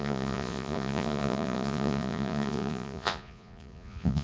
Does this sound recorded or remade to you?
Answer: remade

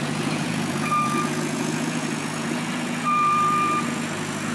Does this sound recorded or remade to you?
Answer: remade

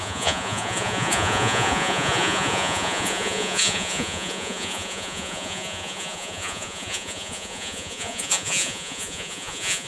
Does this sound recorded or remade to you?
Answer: remade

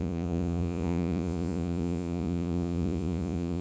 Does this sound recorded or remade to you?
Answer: remade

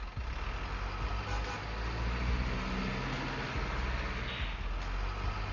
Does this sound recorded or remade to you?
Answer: recorded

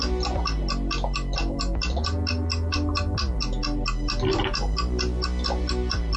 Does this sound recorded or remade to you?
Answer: recorded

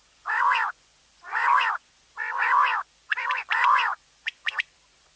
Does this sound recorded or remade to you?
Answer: remade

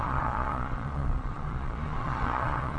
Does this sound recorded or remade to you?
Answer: remade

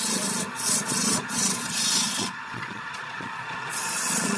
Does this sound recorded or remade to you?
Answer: remade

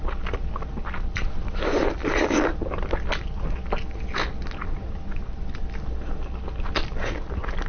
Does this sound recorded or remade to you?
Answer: recorded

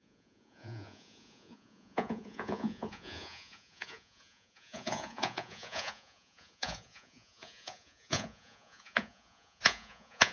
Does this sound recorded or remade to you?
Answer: remade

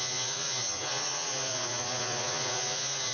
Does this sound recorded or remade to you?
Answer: remade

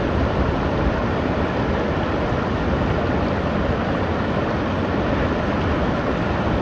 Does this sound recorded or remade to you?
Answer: recorded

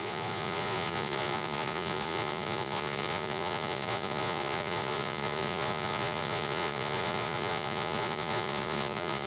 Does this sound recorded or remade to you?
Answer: remade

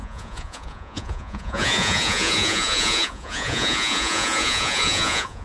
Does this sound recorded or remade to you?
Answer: remade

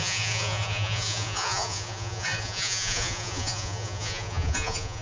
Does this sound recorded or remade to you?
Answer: remade